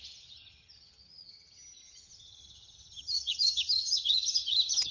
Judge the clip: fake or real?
fake